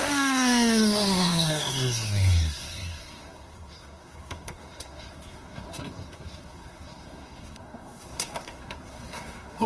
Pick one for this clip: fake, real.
fake